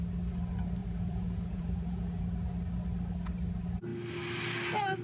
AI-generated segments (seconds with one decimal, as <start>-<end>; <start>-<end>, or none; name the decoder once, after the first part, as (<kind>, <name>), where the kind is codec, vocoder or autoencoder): 0.8-2.2 (vocoder, Vocos)